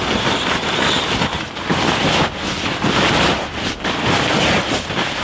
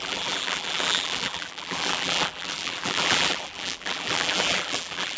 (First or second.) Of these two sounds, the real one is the first